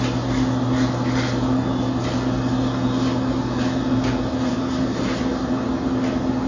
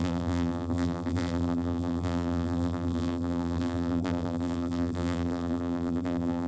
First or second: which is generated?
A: second